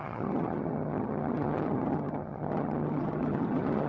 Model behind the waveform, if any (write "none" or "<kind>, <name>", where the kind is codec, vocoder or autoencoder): vocoder, HiFi-GAN